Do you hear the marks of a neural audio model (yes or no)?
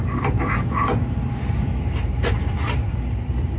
yes